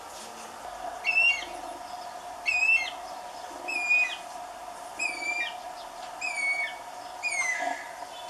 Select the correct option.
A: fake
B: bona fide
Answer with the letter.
B